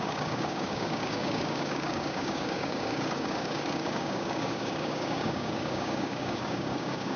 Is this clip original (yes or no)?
no